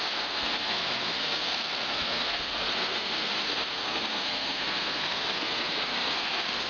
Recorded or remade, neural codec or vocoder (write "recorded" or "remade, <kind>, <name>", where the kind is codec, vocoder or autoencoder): remade, codec, SNAC